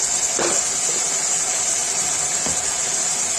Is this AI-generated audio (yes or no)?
no